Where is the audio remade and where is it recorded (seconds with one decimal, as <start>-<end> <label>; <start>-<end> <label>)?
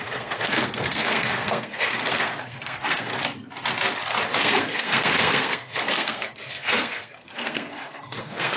0.0-3.1 remade; 3.1-4.4 recorded; 4.4-8.6 remade